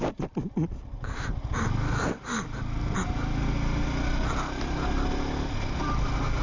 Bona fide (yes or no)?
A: yes